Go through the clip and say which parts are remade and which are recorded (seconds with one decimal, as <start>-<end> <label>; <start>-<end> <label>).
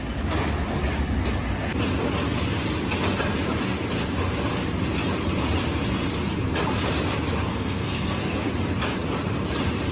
0.0-7.5 recorded; 7.5-8.5 remade; 8.5-9.9 recorded